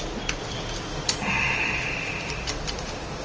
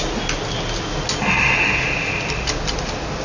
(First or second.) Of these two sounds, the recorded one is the second